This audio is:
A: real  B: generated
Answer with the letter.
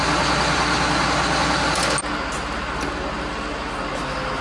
A